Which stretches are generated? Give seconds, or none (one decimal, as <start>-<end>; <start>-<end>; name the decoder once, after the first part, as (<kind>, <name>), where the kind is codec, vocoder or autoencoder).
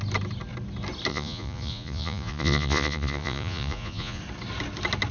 1.1-4.2 (vocoder, Vocos)